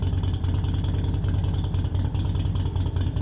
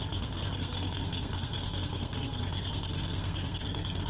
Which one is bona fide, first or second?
first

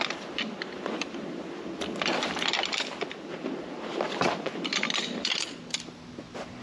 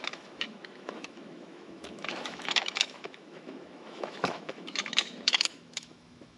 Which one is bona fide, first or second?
first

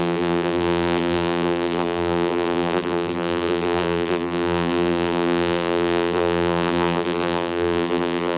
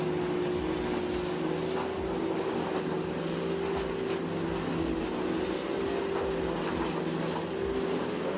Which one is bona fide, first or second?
second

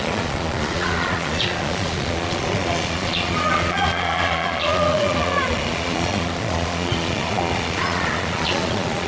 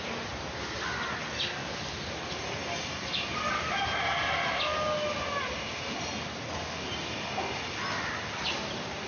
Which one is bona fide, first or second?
second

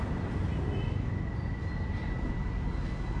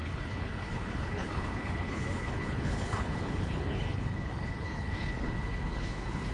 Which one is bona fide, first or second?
first